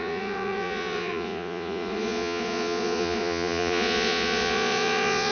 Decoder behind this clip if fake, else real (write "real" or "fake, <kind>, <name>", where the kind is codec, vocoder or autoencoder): fake, vocoder, Vocos